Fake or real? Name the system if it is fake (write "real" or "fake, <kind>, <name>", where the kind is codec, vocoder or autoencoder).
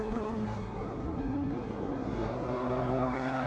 fake, codec, SNAC